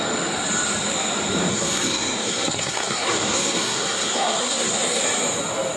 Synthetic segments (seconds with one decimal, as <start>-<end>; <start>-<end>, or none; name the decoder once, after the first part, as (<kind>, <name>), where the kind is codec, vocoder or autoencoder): 1.5-5.0 (codec, SNAC)